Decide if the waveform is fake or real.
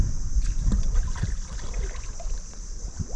fake